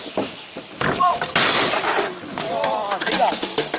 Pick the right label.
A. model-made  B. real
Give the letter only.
B